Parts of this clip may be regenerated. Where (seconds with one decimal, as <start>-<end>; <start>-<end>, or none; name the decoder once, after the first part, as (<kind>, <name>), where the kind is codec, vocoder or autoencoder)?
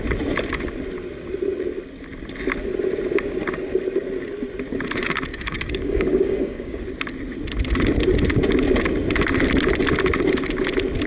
5.3-6.8 (codec, DAC)